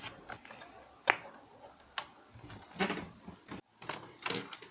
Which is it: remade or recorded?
recorded